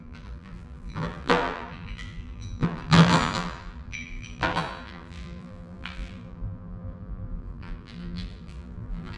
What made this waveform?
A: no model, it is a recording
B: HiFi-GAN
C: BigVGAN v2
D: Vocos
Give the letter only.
C